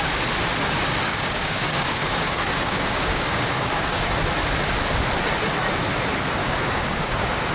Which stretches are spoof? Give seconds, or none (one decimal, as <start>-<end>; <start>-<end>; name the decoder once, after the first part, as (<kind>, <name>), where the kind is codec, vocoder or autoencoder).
1.1-4.1 (codec, DAC); 6.4-7.5